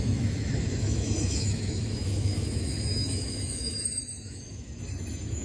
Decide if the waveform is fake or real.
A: fake